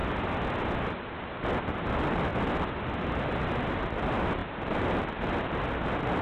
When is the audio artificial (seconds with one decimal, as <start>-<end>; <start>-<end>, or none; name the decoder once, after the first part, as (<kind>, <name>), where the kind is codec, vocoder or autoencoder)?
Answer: none